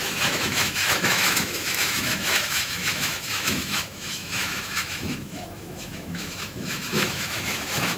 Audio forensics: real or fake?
fake